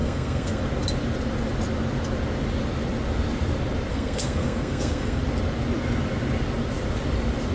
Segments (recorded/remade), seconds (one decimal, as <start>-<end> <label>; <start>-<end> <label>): 0.0-0.6 remade; 0.6-3.9 recorded; 3.9-5.2 remade; 5.2-7.5 recorded